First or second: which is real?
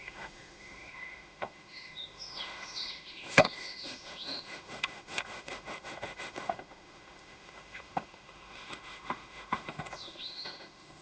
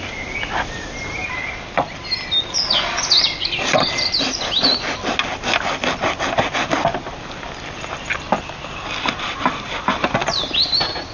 second